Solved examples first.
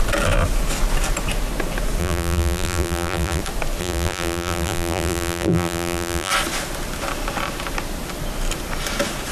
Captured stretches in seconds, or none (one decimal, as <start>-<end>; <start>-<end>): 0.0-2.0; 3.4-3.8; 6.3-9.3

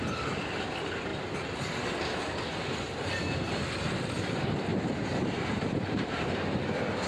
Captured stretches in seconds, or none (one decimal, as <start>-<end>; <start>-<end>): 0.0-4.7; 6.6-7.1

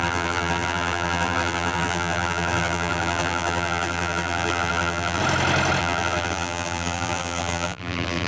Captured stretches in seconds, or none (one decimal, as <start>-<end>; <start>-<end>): 5.2-5.8

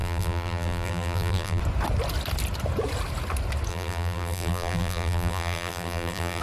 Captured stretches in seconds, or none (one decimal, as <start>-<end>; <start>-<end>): 1.6-3.7

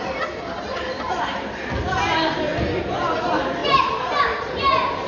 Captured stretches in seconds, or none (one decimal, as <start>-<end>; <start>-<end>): 2.5-3.0

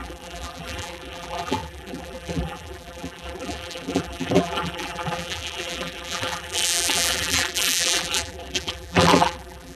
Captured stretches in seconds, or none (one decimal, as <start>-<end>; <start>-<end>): none